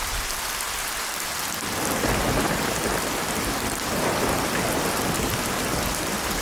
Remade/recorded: remade